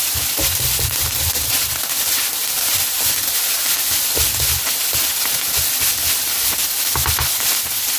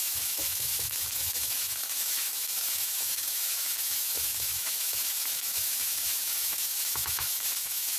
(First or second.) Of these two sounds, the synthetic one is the second